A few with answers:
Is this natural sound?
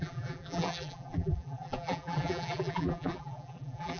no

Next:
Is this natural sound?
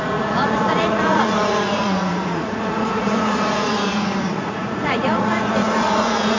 no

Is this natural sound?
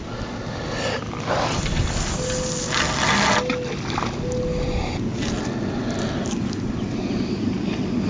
yes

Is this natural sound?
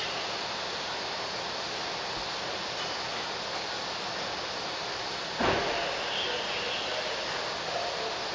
yes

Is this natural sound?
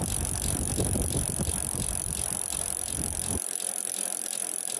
yes